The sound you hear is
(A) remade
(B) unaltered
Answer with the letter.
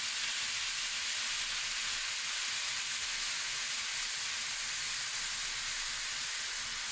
B